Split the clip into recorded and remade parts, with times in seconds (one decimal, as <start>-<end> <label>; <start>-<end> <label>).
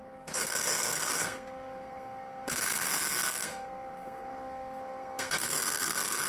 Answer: 0.0-6.3 remade